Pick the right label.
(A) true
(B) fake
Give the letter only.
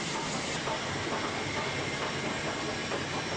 A